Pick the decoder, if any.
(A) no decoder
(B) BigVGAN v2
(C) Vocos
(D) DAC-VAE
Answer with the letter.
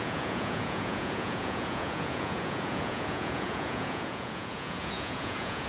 C